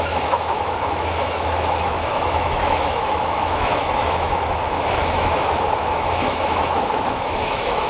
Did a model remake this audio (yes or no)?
yes